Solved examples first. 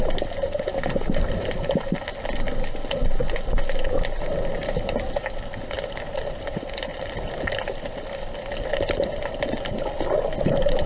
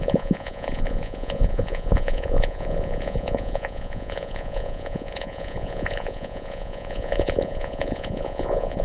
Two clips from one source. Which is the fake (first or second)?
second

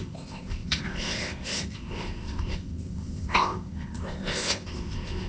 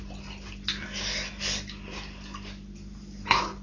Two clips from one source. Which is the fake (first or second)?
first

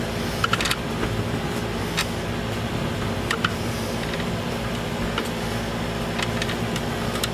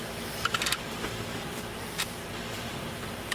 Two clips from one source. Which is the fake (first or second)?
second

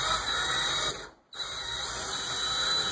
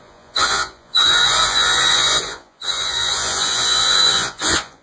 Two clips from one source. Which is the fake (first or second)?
second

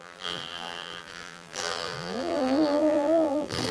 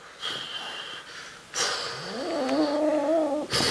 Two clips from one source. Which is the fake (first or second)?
first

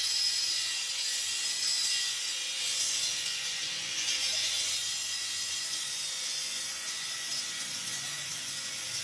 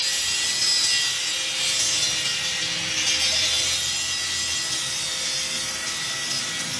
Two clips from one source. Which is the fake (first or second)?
first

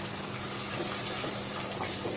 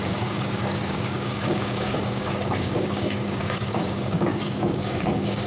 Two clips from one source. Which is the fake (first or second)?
second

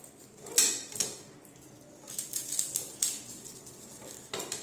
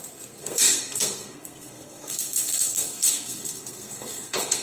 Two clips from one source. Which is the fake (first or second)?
second